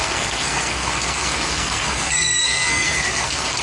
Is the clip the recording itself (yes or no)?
no